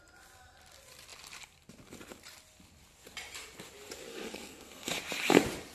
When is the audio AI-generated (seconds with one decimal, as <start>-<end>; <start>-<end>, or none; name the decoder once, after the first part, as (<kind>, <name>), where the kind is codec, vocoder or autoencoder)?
4.1-4.9 (codec, SNAC)